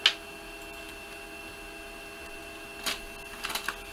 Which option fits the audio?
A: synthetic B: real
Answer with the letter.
B